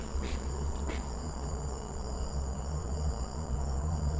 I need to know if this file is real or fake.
fake